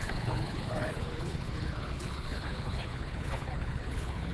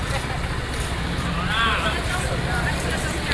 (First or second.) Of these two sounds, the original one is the second